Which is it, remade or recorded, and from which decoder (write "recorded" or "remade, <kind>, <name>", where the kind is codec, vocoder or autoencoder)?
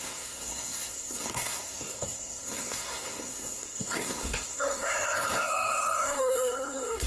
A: remade, codec, SNAC